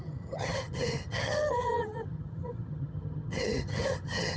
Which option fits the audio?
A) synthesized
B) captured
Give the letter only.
A